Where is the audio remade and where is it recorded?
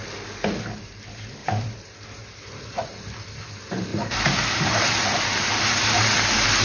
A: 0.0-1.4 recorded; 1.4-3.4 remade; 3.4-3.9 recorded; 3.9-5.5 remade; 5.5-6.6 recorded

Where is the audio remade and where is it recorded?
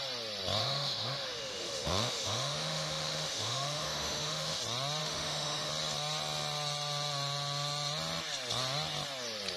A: 0.0-0.6 recorded; 0.6-4.6 remade; 4.6-5.0 recorded; 5.0-5.7 remade; 5.7-9.6 recorded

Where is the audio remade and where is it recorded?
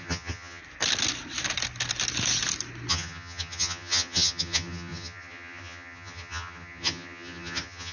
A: 0.0-0.6 remade; 0.6-2.9 recorded; 2.9-7.9 remade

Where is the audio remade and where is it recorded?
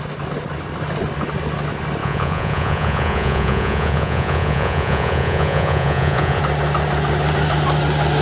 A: 0.0-2.0 recorded; 2.0-6.4 remade; 6.4-8.2 recorded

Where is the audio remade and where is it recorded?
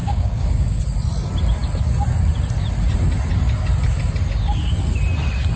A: 0.0-0.8 remade; 0.8-5.6 recorded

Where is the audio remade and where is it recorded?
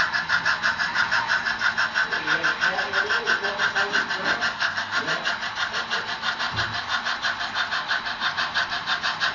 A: 0.0-4.5 recorded; 4.5-5.0 remade; 5.0-9.3 recorded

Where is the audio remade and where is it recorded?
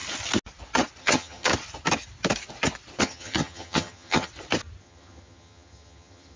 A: 0.0-1.0 recorded; 1.0-1.5 remade; 1.5-3.0 recorded; 3.0-4.3 remade; 4.3-4.8 recorded; 4.8-6.4 remade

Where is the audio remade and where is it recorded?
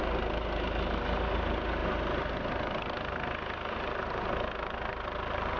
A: 0.0-5.6 recorded